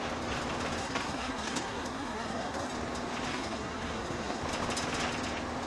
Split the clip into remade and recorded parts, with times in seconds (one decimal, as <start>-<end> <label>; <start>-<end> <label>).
0.0-0.8 recorded; 0.8-2.7 remade; 2.7-3.3 recorded; 3.3-4.4 remade; 4.4-5.7 recorded